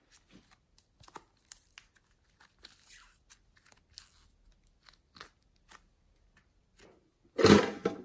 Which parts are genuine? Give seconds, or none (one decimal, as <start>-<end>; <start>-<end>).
0.0-8.0